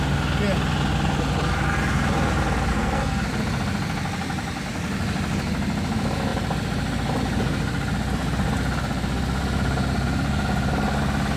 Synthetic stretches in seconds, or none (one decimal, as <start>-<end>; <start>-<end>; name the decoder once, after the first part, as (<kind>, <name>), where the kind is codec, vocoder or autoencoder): 2.7-3.3 (codec, SNAC)